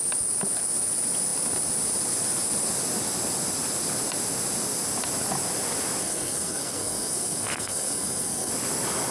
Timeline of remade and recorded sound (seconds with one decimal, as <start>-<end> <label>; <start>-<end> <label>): 0.0-6.0 recorded; 6.0-8.5 remade; 8.5-9.1 recorded